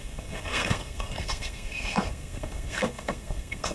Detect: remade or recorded remade